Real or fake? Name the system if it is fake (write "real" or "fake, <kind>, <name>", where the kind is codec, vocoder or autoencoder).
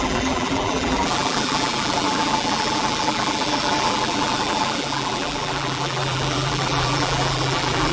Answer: fake, vocoder, BigVGAN v2